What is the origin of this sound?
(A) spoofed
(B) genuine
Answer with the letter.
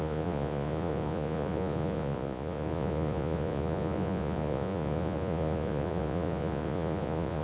A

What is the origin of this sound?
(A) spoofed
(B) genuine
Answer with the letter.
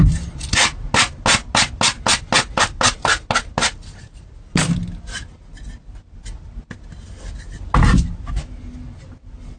B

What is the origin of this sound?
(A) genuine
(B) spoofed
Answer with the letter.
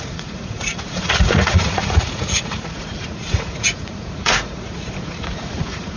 B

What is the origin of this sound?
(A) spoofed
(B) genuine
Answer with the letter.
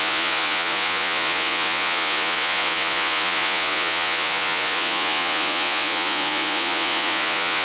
A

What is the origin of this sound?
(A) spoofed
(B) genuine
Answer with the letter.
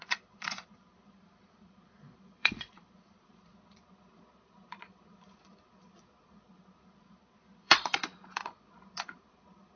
A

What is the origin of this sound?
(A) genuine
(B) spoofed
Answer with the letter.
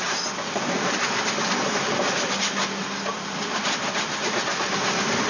A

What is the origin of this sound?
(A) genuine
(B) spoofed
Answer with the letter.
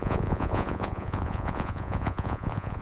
B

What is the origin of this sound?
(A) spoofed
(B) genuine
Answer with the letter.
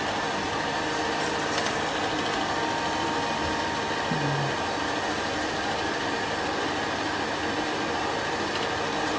B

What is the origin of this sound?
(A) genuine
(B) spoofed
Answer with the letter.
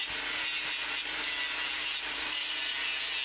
A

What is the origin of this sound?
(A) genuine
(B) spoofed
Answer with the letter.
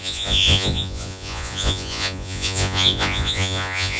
B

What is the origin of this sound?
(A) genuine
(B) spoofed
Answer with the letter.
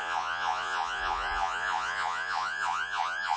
B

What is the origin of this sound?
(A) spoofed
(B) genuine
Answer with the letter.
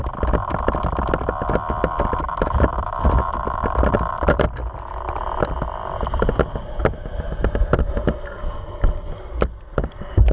B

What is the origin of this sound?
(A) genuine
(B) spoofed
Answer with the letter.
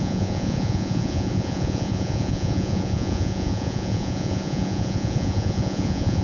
B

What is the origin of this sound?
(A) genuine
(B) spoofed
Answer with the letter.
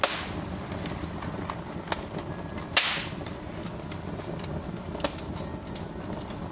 A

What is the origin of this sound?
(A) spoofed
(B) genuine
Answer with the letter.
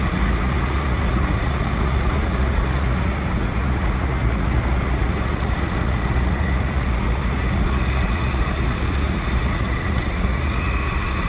A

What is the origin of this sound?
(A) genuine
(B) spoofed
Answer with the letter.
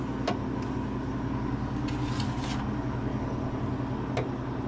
A